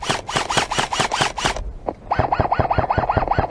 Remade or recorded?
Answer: recorded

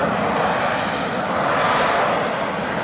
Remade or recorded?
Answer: recorded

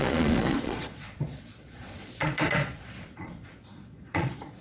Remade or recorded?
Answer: remade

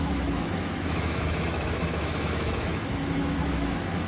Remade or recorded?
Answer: remade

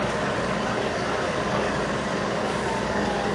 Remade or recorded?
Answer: remade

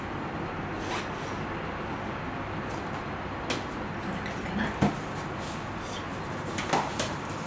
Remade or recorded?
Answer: recorded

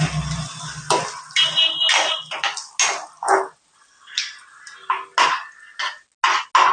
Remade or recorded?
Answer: recorded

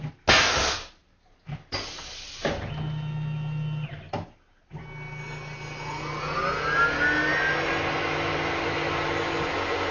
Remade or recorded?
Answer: recorded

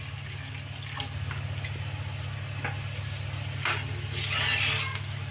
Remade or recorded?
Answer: recorded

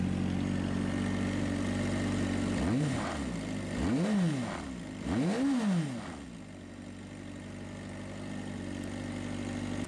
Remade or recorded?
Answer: recorded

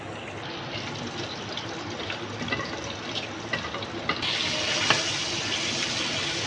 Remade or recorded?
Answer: recorded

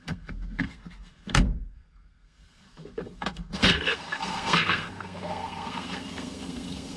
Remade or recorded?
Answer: remade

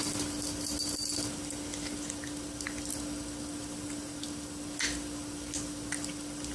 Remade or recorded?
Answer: recorded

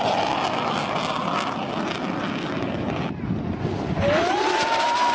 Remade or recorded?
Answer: recorded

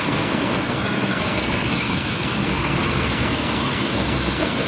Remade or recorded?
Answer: remade